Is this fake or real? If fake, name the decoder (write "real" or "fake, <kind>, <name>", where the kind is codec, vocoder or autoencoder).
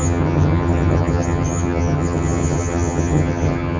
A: fake, vocoder, HiFi-GAN